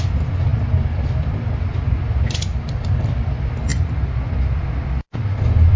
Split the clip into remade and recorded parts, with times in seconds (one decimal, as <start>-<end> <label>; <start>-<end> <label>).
0.0-5.8 recorded